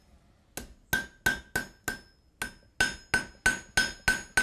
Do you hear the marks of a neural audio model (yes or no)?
no